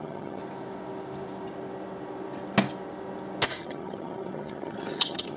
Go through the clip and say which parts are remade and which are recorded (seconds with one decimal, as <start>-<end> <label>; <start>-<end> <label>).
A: 0.0-0.4 remade; 0.4-3.6 recorded; 3.6-5.4 remade